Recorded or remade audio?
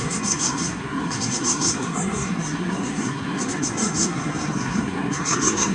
remade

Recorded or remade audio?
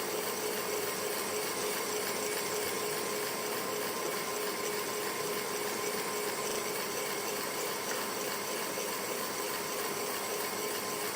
recorded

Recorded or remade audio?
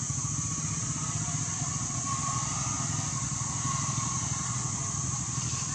recorded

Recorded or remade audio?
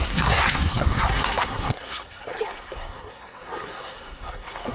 remade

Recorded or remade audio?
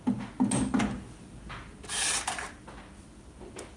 recorded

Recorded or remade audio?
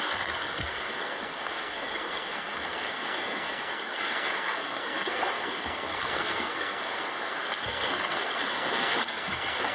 remade